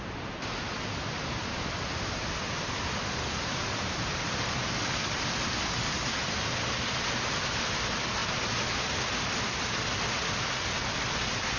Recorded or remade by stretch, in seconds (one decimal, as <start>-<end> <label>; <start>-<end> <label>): 0.0-11.6 recorded

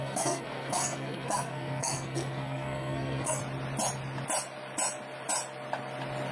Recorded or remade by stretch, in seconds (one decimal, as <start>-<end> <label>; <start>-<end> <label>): 0.0-3.4 remade; 3.4-6.3 recorded

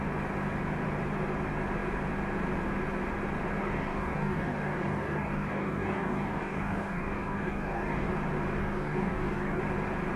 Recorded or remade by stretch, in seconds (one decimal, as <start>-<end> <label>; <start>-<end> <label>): 0.0-3.6 recorded; 3.6-8.1 remade; 8.1-8.6 recorded; 8.6-9.6 remade; 9.6-10.2 recorded

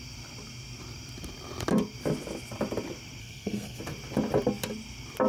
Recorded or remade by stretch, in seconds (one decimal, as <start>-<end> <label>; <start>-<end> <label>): 0.0-3.2 recorded; 3.2-3.8 remade; 3.8-5.3 recorded

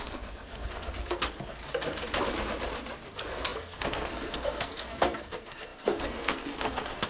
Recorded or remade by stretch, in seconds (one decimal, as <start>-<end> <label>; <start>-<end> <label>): 0.0-1.6 remade; 1.6-3.1 recorded; 3.1-7.1 remade

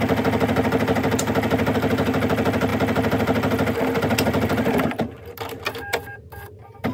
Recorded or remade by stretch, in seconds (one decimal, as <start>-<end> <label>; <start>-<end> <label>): 0.0-6.9 recorded

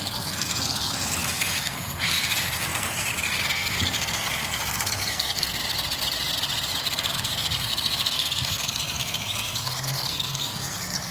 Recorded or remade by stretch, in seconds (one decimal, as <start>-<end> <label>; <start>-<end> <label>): 0.0-5.6 remade; 5.6-6.8 recorded; 6.8-11.1 remade

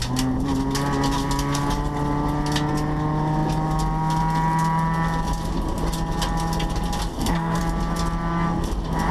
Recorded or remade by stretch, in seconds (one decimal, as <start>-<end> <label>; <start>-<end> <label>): 0.0-7.1 recorded; 7.1-7.6 remade; 7.6-9.1 recorded